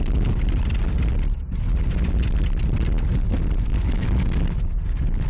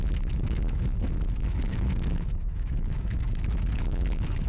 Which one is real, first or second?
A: first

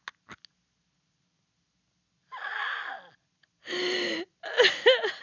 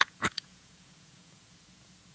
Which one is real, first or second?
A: first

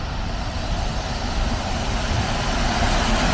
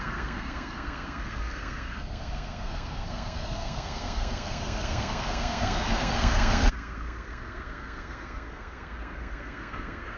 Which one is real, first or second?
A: first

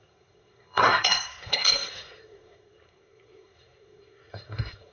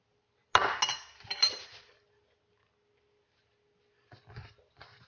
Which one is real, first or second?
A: second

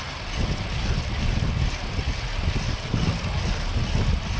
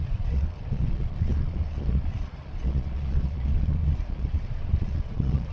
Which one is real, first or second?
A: first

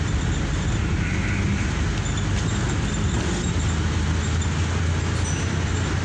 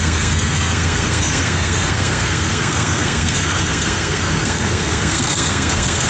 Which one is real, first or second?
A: first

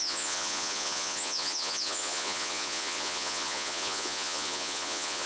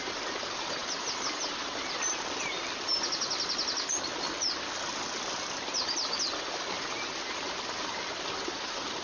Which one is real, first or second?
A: second